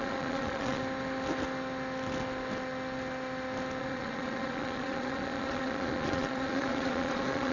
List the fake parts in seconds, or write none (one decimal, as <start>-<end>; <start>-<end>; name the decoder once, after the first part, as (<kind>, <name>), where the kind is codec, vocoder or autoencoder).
0.0-0.8 (vocoder, Vocos); 3.8-7.5